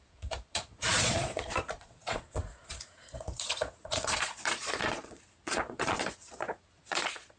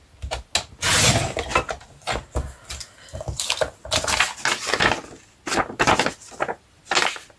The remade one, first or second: first